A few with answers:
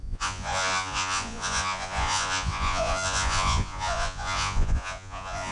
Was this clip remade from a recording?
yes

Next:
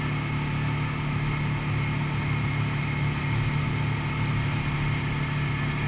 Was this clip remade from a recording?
no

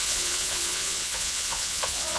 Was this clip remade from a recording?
yes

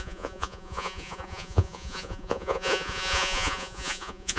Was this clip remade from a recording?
yes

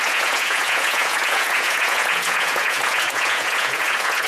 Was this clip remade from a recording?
yes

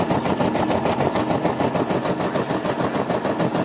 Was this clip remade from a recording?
no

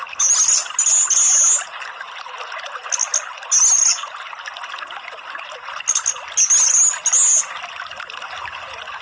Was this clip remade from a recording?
no